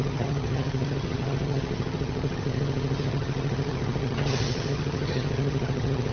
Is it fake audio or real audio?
fake